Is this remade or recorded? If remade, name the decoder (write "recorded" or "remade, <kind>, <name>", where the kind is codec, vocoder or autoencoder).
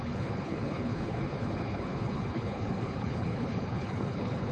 remade, codec, HILCodec